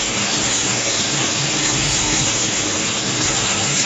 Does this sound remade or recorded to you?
remade